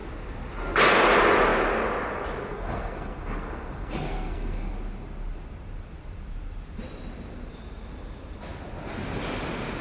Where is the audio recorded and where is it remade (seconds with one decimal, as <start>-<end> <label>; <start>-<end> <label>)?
0.0-2.5 recorded; 2.5-4.7 remade; 4.7-9.8 recorded